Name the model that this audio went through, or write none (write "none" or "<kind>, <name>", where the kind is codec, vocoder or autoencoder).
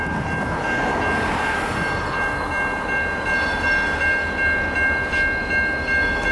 none